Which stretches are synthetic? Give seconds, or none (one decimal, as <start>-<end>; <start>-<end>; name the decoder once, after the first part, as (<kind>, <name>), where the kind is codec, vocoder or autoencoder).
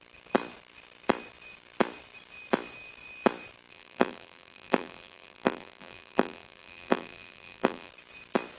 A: 3.7-7.9 (vocoder, BigVGAN v2)